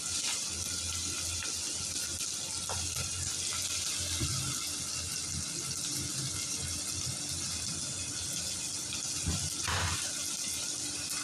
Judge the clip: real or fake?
real